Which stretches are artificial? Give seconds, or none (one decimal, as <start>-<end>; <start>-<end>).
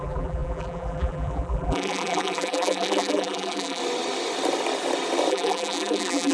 0.0-3.8; 5.3-6.3